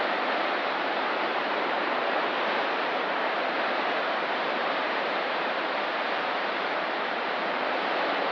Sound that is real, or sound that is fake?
fake